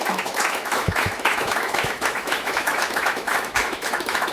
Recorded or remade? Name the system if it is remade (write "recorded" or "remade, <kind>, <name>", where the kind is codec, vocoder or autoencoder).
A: remade, autoencoder, DAC-VAE